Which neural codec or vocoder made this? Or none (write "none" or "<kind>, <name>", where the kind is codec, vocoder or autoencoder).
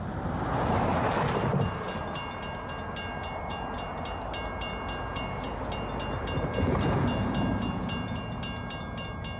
none